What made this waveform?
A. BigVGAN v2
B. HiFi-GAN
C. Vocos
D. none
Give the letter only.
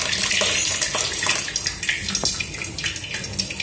D